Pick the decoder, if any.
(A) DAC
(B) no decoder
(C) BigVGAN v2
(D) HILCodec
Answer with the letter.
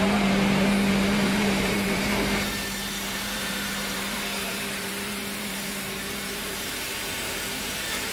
C